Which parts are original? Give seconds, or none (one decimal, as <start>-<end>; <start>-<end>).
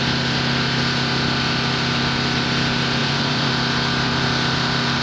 0.0-3.0; 3.5-5.0